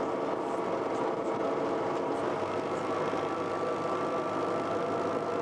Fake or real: real